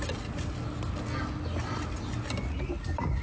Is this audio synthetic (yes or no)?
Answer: no